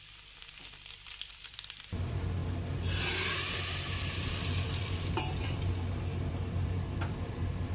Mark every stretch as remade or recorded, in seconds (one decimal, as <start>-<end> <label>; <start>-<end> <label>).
0.0-2.4 remade; 2.4-3.4 recorded; 3.4-7.7 remade

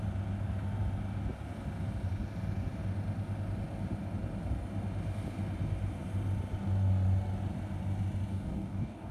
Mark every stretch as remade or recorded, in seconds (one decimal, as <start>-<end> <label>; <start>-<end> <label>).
0.0-8.3 recorded; 8.3-9.1 remade

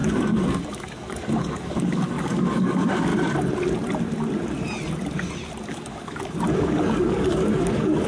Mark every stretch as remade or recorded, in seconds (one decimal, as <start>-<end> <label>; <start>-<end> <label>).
0.0-3.1 remade; 3.1-5.7 recorded; 5.7-8.1 remade

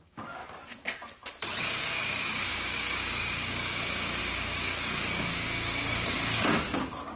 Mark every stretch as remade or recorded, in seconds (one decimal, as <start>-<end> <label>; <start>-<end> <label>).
0.0-0.4 remade; 0.4-1.6 recorded; 1.6-7.2 remade

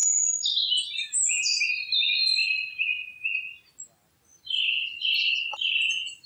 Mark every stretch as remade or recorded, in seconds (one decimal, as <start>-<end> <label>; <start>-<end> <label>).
0.0-6.3 recorded

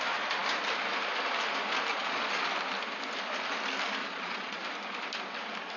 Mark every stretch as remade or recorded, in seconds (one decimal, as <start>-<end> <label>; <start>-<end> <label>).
0.0-1.9 recorded; 1.9-2.5 remade; 2.5-4.0 recorded; 4.0-4.6 remade; 4.6-5.8 recorded